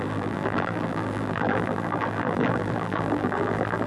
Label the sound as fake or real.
fake